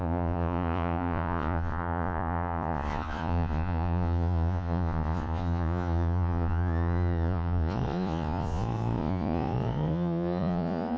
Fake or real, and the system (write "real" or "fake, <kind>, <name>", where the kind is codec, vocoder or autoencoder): fake, vocoder, Vocos